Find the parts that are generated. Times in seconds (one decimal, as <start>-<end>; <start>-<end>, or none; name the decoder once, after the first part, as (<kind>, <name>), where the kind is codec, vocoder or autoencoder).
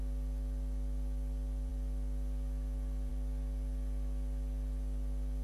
none